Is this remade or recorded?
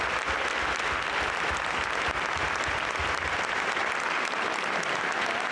recorded